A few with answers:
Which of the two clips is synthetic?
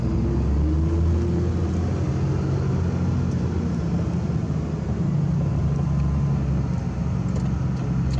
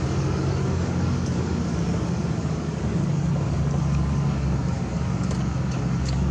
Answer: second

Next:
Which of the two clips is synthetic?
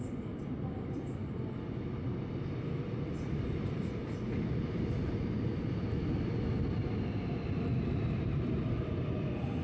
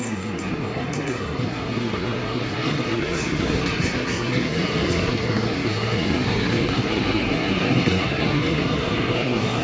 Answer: second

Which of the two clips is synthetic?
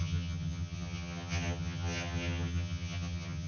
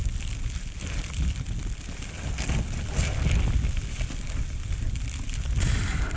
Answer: first